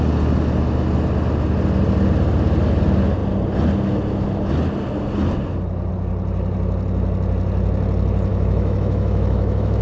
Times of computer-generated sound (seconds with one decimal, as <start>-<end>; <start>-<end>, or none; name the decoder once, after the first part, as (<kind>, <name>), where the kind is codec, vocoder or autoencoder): 8.3-9.8 (autoencoder, DAC-VAE)

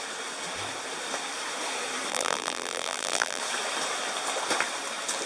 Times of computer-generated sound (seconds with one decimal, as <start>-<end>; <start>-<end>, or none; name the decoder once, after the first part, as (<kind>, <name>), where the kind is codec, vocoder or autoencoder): 2.1-3.4 (vocoder, BigVGAN v2)

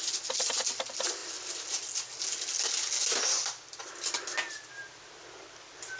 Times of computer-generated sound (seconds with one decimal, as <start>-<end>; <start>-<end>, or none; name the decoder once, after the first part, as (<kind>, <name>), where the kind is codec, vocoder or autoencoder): none

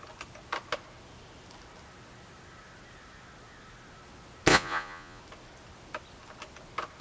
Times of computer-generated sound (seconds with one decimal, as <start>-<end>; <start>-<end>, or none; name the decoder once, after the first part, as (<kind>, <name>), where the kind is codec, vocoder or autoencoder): 4.5-5.2 (vocoder, Vocos)

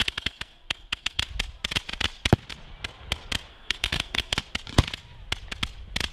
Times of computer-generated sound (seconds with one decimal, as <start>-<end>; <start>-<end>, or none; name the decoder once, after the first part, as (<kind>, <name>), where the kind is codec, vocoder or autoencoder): 0.0-1.3 (codec, SNAC); 3.5-4.4